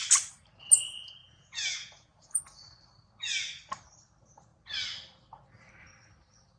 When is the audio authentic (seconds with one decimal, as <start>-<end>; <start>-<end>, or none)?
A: 0.0-1.2; 2.4-6.6